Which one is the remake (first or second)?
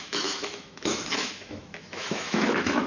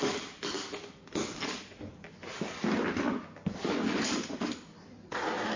first